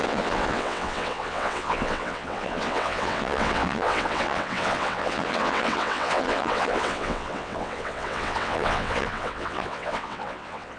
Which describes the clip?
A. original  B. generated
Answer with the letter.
B